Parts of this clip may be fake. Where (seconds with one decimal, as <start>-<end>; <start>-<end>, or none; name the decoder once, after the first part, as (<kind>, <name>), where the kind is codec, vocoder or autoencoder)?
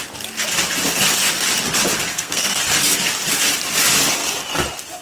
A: 2.1-2.6 (codec, SNAC)